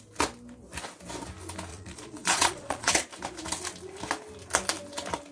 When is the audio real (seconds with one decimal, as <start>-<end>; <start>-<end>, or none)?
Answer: 0.0-1.7; 2.9-5.3